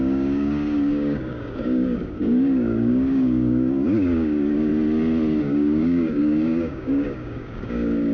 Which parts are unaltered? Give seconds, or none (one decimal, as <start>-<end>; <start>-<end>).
4.7-5.4